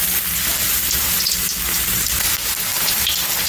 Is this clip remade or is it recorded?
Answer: recorded